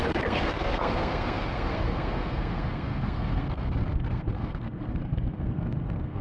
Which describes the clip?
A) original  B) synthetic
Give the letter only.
B